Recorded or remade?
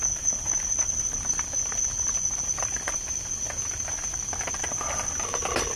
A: recorded